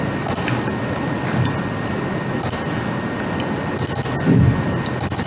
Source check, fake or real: real